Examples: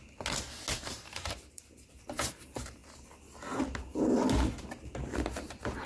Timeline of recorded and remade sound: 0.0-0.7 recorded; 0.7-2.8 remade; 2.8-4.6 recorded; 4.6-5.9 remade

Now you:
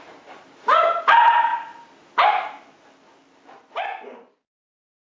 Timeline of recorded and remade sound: 0.0-1.5 remade; 1.5-4.6 recorded; 4.6-5.2 remade